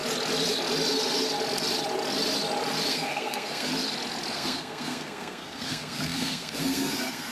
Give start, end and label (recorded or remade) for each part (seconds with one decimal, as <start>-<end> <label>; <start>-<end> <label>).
0.0-2.9 recorded; 2.9-3.7 remade; 3.7-4.3 recorded; 4.3-7.3 remade